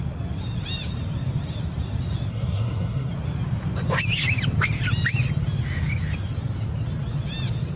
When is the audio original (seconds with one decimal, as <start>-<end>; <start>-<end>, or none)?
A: 0.0-2.3; 3.1-7.8